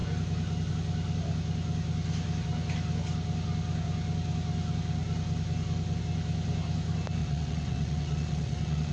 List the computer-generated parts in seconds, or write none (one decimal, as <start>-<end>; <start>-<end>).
7.2-8.9